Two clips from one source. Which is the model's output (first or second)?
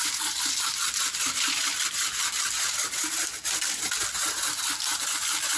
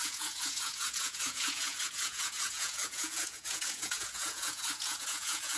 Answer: second